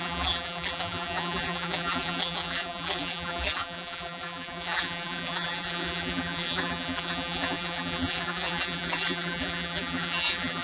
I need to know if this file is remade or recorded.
remade